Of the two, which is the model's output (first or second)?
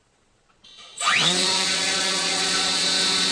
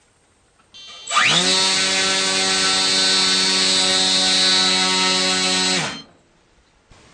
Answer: first